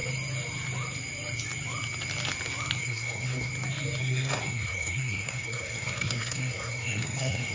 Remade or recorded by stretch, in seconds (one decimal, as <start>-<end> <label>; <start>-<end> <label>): 0.0-2.8 recorded; 2.8-3.5 remade; 3.5-4.0 recorded; 4.0-7.5 remade